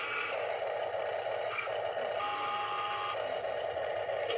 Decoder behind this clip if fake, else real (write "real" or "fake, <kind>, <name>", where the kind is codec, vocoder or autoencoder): real